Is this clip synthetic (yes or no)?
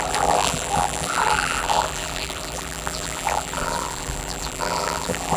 yes